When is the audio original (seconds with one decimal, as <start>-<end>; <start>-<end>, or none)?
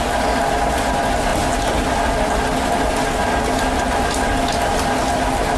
0.0-5.6